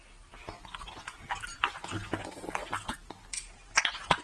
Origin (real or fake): real